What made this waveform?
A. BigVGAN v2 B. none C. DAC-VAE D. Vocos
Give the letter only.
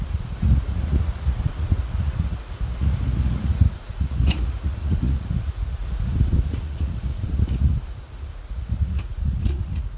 D